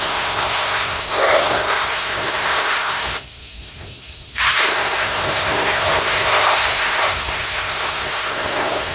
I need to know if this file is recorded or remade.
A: remade